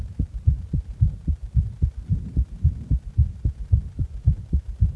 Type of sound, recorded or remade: recorded